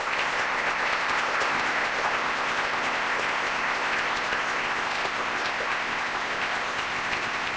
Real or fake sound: fake